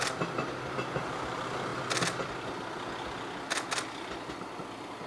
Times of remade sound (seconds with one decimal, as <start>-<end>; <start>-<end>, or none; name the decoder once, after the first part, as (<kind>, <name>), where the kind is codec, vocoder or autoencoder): none